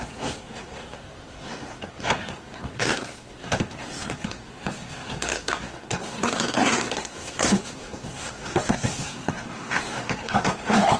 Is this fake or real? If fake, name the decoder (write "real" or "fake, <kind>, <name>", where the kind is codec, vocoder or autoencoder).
fake, codec, SNAC